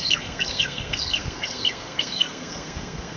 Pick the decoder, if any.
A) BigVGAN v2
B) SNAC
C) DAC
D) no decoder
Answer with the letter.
B